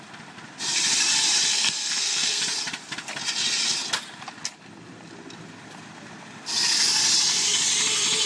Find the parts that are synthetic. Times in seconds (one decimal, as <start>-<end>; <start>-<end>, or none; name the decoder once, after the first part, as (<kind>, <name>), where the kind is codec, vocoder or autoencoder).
1.5-2.4 (codec, SNAC)